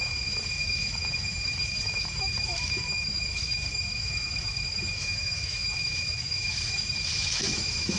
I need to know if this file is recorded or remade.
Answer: remade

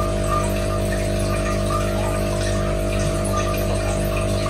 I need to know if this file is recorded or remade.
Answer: recorded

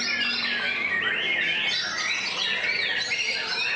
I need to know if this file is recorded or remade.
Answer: recorded